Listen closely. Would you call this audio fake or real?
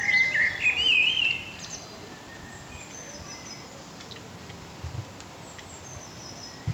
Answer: real